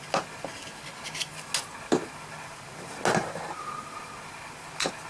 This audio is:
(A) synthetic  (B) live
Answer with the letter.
B